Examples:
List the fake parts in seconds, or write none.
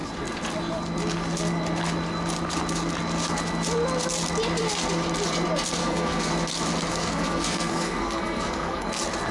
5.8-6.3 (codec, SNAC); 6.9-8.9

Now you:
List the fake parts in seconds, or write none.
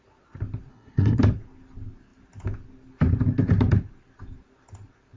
0.7-1.2 (codec, SNAC)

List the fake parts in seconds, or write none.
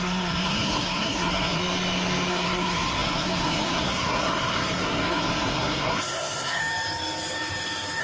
0.0-1.6 (codec, SNAC); 2.3-6.6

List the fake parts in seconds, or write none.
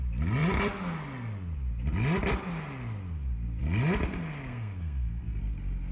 4.5-5.4 (codec, SNAC)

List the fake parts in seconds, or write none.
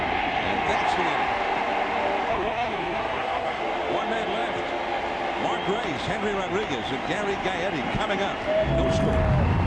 2.3-3.6 (codec, SNAC)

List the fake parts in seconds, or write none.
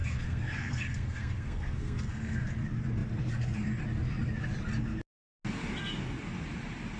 0.0-2.4 (codec, SNAC)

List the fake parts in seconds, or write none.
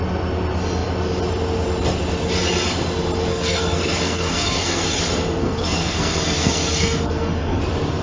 3.3-5.0 (codec, SNAC); 5.4-7.6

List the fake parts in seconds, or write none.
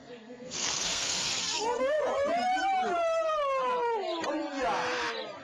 0.0-2.0 (codec, SNAC)